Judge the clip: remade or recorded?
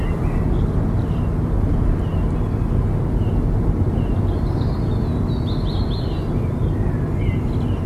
recorded